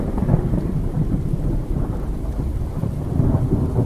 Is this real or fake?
real